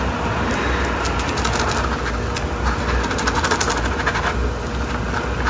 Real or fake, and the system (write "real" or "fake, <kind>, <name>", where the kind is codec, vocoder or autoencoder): real